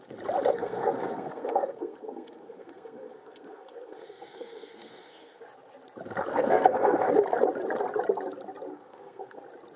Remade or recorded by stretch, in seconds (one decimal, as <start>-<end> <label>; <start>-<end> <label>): 0.0-0.5 recorded; 0.5-5.4 remade; 5.4-6.3 recorded; 6.3-7.1 remade; 7.1-8.7 recorded; 8.7-9.4 remade; 9.4-9.8 recorded